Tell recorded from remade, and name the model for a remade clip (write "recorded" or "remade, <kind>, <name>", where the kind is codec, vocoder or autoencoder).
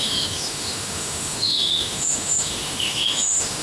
remade, autoencoder, DAC-VAE